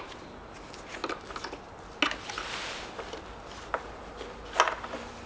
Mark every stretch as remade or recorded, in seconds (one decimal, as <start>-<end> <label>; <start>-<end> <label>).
0.0-5.3 recorded